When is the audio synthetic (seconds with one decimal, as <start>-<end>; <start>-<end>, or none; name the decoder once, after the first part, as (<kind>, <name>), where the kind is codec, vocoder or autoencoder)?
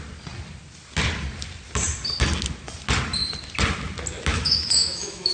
4.3-5.3 (autoencoder, DAC-VAE)